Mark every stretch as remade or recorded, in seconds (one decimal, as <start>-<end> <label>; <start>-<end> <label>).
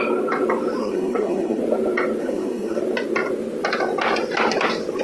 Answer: 0.0-0.8 recorded; 0.8-1.6 remade; 1.6-2.2 recorded; 2.2-2.8 remade; 2.8-5.0 recorded